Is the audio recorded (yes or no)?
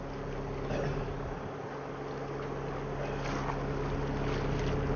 yes